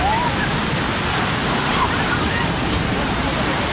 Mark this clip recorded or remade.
remade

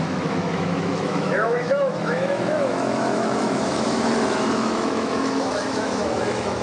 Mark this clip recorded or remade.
remade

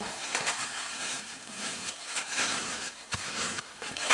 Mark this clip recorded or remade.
remade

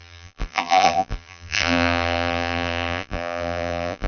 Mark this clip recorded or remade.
remade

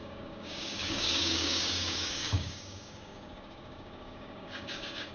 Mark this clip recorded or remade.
remade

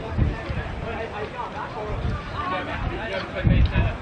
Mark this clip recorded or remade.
remade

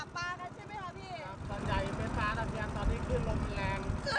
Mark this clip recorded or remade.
recorded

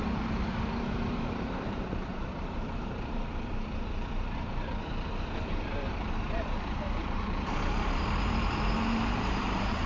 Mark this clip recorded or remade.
remade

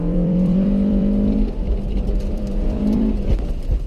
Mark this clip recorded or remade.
remade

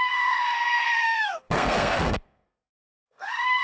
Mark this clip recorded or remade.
remade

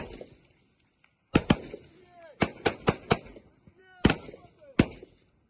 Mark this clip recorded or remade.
recorded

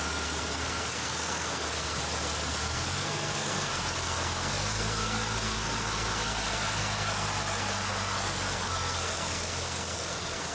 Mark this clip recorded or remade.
remade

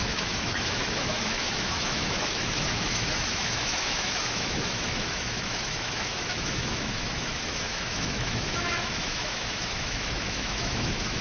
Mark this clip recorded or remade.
remade